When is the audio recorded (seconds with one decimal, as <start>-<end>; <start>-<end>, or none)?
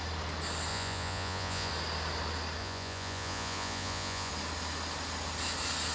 0.0-0.7; 1.7-2.6; 4.3-5.9